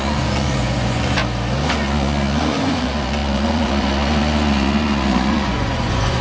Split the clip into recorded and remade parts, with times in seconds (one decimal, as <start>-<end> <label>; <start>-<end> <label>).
0.0-1.2 remade; 1.2-1.7 recorded; 1.7-6.2 remade

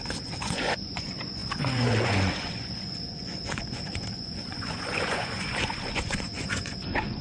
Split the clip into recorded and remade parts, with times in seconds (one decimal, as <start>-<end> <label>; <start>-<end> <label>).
0.0-7.2 remade

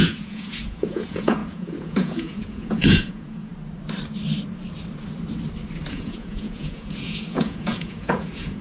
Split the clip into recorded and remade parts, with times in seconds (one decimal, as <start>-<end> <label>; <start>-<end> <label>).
0.0-3.5 remade; 3.5-5.9 recorded; 5.9-8.6 remade

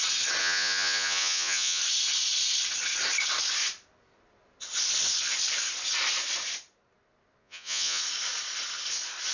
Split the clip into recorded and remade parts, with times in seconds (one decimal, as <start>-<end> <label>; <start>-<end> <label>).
0.0-0.4 recorded; 0.4-1.8 remade; 1.8-7.4 recorded; 7.4-8.0 remade; 8.0-9.3 recorded

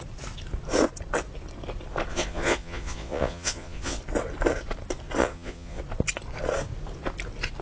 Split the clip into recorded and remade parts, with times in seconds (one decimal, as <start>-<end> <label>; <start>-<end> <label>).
0.0-2.1 recorded; 2.1-4.0 remade; 4.0-5.2 recorded; 5.2-5.8 remade; 5.8-7.6 recorded